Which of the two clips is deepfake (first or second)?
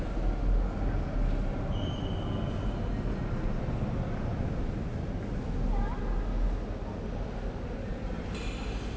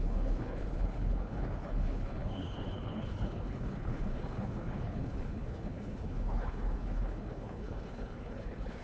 second